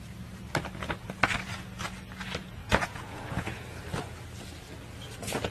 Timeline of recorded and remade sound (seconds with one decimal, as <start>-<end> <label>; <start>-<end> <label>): 0.0-2.6 recorded; 2.6-3.6 remade; 3.6-5.5 recorded